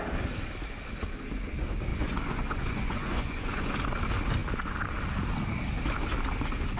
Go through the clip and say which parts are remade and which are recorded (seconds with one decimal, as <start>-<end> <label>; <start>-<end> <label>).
0.0-1.9 recorded; 1.9-3.7 remade; 3.7-6.8 recorded

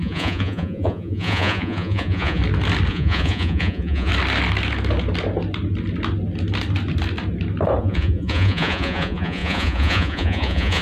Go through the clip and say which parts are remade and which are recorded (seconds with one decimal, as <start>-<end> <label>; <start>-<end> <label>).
0.0-2.4 remade; 2.4-2.9 recorded; 2.9-4.1 remade; 4.1-7.8 recorded; 7.8-10.8 remade

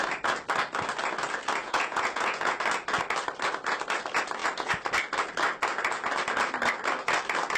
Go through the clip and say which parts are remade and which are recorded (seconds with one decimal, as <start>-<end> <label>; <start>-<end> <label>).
0.0-1.6 recorded; 1.6-2.6 remade; 2.6-7.6 recorded

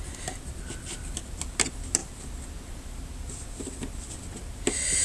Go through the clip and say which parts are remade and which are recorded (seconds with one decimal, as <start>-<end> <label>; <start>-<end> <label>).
0.0-5.0 recorded

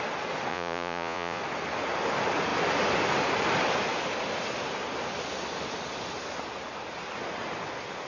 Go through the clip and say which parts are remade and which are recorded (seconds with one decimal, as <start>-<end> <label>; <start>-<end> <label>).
0.0-0.5 recorded; 0.5-1.4 remade; 1.4-8.1 recorded

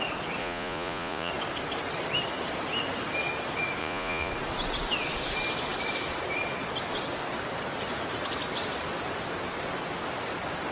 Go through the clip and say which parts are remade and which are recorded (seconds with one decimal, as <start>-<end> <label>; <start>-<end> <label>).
0.0-0.4 recorded; 0.4-1.3 remade; 1.3-3.8 recorded; 3.8-4.3 remade; 4.3-10.7 recorded